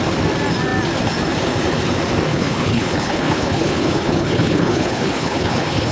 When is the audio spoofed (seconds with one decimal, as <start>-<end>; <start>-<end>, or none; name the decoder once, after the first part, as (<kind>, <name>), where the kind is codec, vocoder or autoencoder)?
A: 2.3-5.9 (codec, HILCodec)